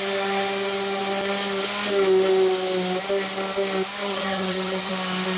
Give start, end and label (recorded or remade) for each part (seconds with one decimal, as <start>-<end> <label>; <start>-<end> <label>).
0.0-4.0 recorded; 4.0-4.9 remade; 4.9-5.4 recorded